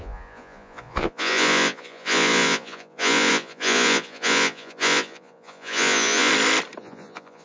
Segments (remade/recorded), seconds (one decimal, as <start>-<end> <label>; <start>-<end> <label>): 0.0-6.3 remade; 6.3-6.8 recorded; 6.8-7.4 remade